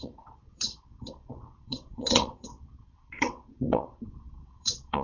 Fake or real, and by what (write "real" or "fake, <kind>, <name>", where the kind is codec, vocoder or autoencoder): fake, vocoder, WaveNeXt